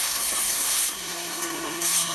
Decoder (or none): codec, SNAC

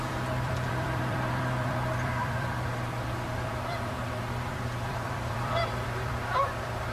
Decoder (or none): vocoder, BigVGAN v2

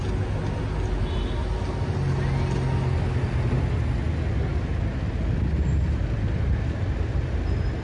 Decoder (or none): none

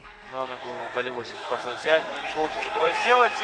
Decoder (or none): codec, SNAC